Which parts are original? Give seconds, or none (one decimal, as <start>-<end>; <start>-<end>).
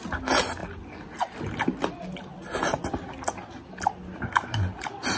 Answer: 0.0-5.2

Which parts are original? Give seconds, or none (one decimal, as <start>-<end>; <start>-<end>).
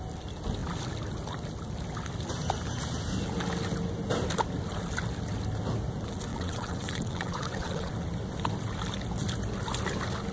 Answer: 0.0-6.3; 7.9-10.3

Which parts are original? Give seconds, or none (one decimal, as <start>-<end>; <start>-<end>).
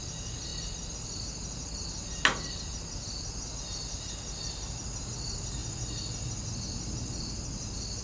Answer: 0.0-8.0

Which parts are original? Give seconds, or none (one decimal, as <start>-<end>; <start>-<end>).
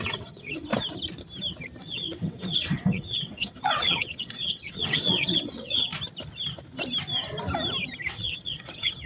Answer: 0.7-1.8; 5.9-8.1